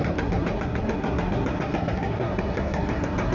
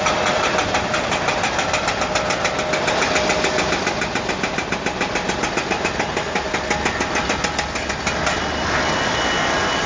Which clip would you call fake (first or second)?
first